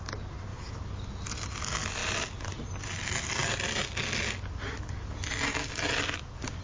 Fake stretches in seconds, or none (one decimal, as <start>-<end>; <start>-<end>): none